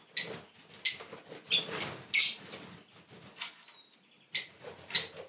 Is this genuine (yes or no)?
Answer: yes